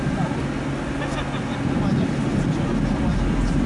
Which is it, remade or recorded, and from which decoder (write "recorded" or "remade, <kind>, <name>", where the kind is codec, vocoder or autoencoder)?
recorded